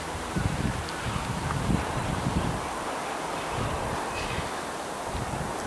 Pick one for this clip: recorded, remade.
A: remade